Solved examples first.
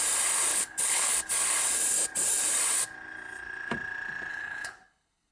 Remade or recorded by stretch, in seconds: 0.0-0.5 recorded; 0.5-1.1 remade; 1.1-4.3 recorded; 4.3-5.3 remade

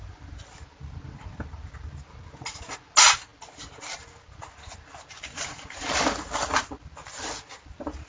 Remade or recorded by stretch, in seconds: 0.0-8.1 recorded

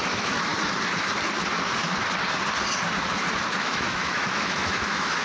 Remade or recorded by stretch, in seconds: 0.0-0.5 remade; 0.5-3.6 recorded; 3.6-5.2 remade

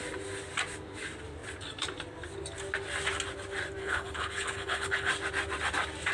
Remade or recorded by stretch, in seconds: 0.0-3.8 recorded; 3.8-5.1 remade; 5.1-6.1 recorded

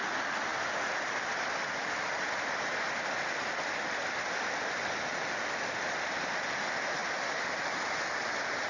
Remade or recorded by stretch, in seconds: 0.0-8.7 recorded

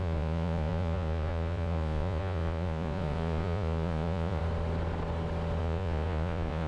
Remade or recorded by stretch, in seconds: 0.0-4.4 remade; 4.4-5.6 recorded; 5.6-6.7 remade

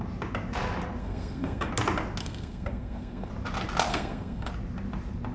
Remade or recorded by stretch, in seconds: 0.0-1.0 recorded; 1.0-1.7 remade; 1.7-2.2 recorded; 2.2-3.3 remade; 3.3-3.9 recorded; 3.9-4.5 remade; 4.5-5.3 recorded